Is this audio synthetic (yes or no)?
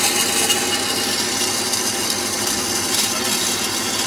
no